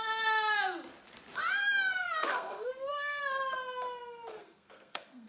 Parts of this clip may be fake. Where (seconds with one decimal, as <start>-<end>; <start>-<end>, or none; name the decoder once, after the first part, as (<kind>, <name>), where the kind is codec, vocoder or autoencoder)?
1.9-3.2 (codec, SNAC); 4.4-5.3